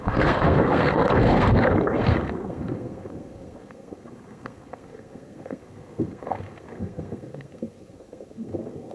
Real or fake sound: fake